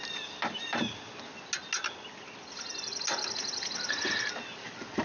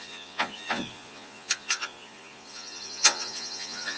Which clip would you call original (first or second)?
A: first